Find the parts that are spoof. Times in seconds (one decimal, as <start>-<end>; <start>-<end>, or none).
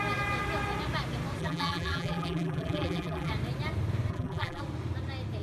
1.4-3.3; 4.1-4.6